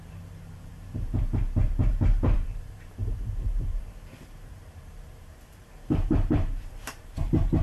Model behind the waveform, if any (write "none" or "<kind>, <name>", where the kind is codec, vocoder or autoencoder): vocoder, BigVGAN v2